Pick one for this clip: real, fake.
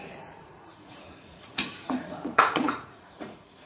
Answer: fake